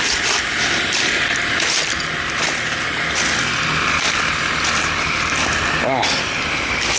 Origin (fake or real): real